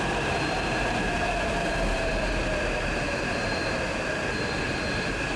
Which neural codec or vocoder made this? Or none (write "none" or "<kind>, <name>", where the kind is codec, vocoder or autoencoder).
vocoder, BigVGAN v2